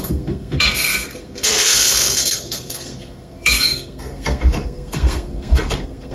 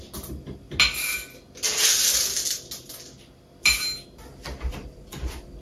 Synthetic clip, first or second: first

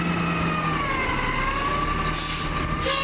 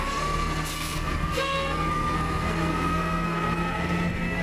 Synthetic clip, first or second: second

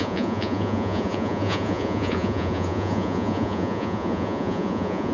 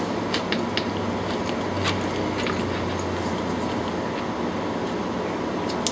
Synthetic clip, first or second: first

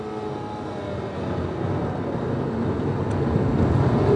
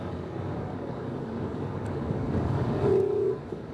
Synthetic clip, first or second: second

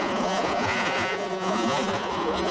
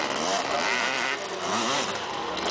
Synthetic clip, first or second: first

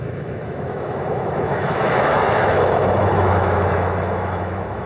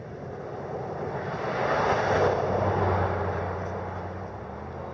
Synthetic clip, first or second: first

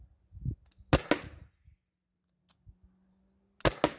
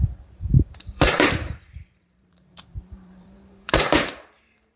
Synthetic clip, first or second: second